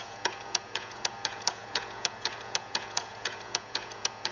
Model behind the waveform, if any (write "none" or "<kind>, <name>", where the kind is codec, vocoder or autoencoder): vocoder, Vocos